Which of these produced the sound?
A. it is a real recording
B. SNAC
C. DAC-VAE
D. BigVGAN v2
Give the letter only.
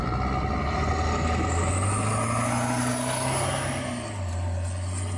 A